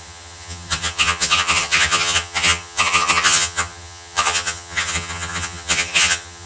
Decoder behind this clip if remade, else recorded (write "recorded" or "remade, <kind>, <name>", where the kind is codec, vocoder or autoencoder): remade, vocoder, HiFi-GAN